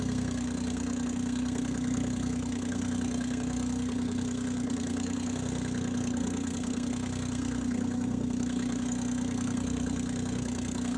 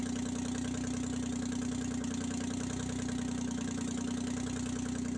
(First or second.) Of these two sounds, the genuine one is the second